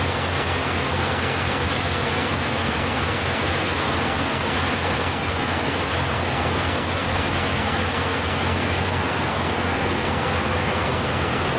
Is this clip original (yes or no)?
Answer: no